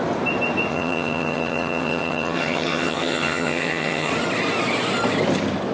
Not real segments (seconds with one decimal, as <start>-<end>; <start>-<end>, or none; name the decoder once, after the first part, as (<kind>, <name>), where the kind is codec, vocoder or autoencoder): 0.7-4.1 (vocoder, HiFi-GAN)